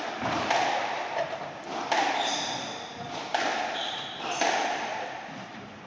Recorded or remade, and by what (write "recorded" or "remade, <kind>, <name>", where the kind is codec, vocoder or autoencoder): remade, vocoder, BigVGAN v2